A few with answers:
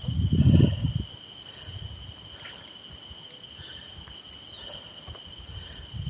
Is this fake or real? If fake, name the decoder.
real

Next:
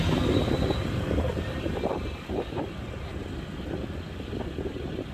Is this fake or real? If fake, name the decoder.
real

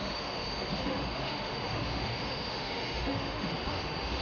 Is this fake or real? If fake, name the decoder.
fake, autoencoder, DAC-VAE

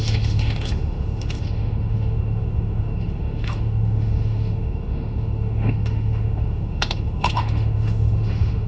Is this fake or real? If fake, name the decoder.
fake, autoencoder, DAC-VAE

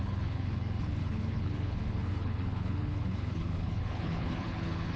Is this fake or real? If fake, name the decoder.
fake, codec, HILCodec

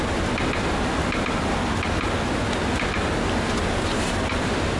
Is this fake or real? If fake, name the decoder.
real